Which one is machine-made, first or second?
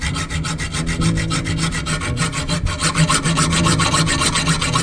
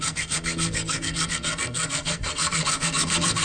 second